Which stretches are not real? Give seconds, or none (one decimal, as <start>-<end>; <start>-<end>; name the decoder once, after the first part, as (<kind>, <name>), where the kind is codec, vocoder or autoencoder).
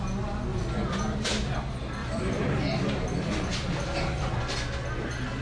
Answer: 0.5-1.3 (vocoder, BigVGAN v2); 2.0-4.3